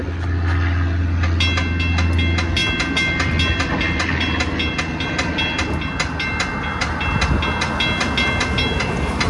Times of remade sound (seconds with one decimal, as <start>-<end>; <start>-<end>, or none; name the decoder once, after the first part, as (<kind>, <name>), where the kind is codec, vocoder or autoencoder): none